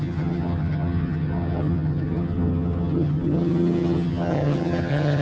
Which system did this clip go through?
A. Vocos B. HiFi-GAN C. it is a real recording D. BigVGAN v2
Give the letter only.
B